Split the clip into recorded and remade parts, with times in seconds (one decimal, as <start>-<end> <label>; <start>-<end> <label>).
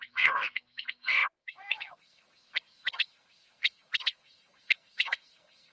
0.0-5.7 remade